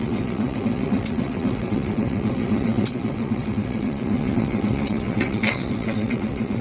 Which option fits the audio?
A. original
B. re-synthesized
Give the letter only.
B